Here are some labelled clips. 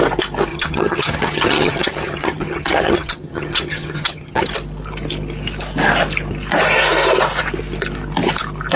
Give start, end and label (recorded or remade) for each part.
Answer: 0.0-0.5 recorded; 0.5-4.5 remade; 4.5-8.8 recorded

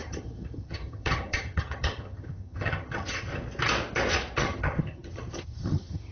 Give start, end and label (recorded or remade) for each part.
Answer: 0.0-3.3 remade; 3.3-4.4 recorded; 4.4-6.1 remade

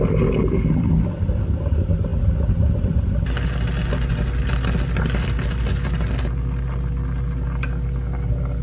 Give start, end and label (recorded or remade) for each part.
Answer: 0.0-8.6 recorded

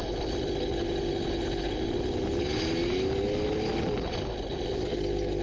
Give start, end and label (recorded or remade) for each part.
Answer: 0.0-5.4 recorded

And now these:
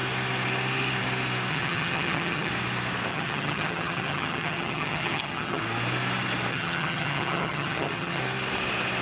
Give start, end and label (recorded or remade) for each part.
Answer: 0.0-1.5 recorded; 1.5-2.5 remade; 2.5-3.1 recorded; 3.1-5.6 remade; 5.6-6.5 recorded; 6.5-8.2 remade; 8.2-9.0 recorded